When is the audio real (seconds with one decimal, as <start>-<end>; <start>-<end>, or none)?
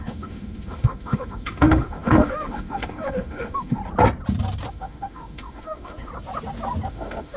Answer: 3.8-4.7; 6.1-6.9